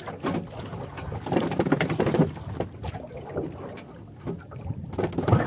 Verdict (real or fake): real